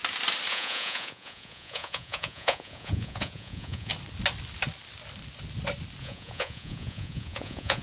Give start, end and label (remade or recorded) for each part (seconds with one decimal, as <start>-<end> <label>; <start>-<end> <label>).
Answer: 0.0-0.5 recorded; 0.5-3.9 remade; 3.9-6.0 recorded; 6.0-7.8 remade